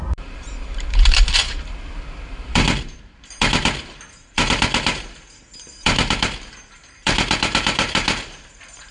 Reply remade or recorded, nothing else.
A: remade